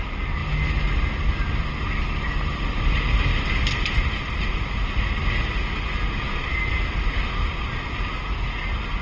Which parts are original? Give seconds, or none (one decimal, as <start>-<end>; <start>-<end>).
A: 0.0-9.0